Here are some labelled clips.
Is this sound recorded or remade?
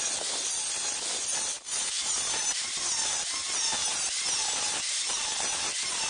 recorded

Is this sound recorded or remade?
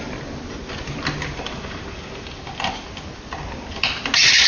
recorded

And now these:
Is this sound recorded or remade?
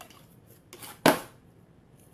recorded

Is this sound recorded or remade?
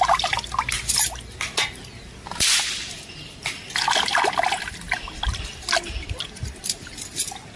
recorded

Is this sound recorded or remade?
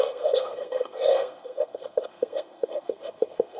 remade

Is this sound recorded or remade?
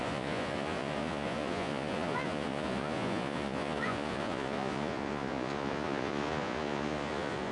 remade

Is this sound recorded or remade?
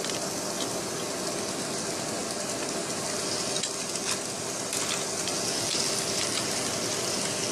recorded